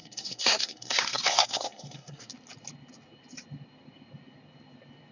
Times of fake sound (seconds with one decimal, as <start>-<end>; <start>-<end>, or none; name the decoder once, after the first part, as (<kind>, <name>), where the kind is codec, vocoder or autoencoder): 0.0-2.3 (codec, SNAC)